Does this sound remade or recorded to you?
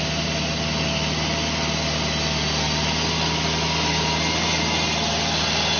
recorded